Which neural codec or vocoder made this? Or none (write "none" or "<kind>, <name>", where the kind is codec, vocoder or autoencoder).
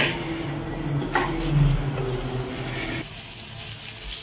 none